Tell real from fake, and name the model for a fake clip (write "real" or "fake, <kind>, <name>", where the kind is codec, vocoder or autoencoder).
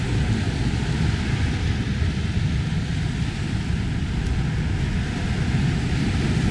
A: real